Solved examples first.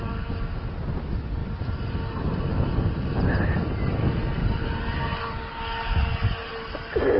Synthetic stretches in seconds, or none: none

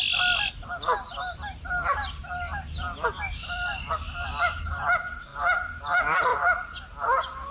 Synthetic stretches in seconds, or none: none

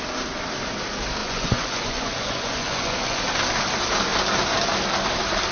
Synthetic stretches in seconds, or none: 1.2-3.2 (vocoder, Vocos)

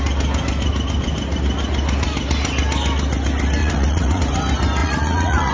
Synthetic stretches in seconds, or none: 3.6-4.2 (vocoder, Vocos); 4.8-5.5

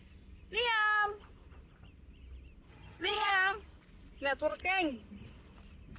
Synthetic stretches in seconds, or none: 2.7-3.3 (vocoder, HiFi-GAN)

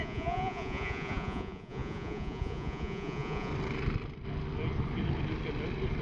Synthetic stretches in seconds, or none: 0.0-3.5 (vocoder, Vocos)

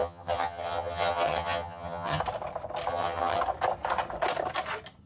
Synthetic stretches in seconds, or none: 0.0-2.2 (vocoder, HiFi-GAN); 2.9-3.4